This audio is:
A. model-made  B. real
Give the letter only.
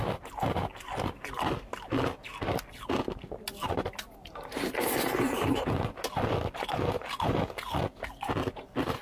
B